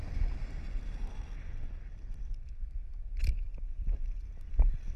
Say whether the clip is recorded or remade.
recorded